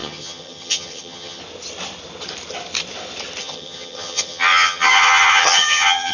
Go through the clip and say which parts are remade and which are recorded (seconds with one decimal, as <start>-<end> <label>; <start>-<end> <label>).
0.0-1.4 remade; 1.4-3.4 recorded; 3.4-6.1 remade